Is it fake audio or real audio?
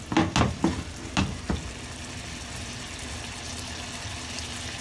real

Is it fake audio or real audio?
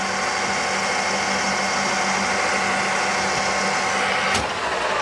real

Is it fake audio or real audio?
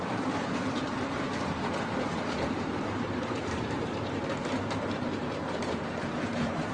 fake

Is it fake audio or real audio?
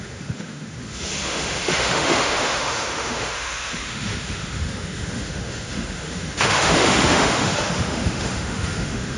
fake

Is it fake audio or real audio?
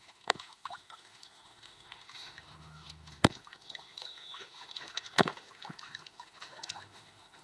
fake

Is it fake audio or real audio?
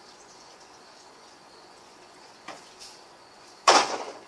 fake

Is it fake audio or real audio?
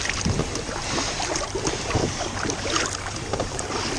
real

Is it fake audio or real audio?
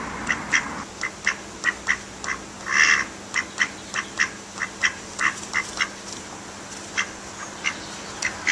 real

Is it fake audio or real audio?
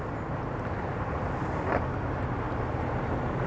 real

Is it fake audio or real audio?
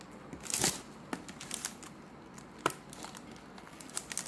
real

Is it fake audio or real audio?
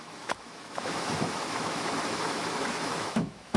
fake